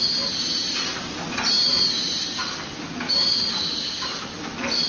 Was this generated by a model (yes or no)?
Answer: no